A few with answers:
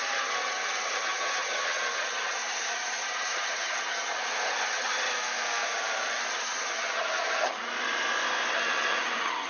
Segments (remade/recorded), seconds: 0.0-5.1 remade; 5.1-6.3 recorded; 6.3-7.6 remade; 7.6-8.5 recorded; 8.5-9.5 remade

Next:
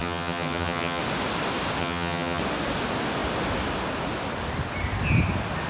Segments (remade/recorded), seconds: 0.0-1.0 remade; 1.0-1.8 recorded; 1.8-2.4 remade; 2.4-5.7 recorded